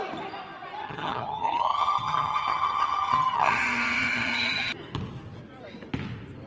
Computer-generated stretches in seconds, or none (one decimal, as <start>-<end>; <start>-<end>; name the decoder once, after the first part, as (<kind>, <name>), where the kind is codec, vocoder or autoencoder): 0.8-4.7 (vocoder, HiFi-GAN)